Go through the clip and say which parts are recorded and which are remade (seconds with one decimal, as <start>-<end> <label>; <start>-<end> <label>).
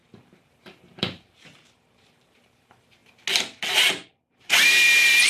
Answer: 0.0-3.0 remade; 3.0-3.8 recorded; 3.8-5.3 remade